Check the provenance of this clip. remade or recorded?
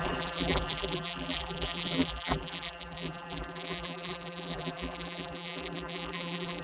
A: remade